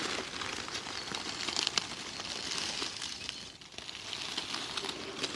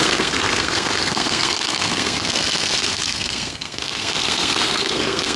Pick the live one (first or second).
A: first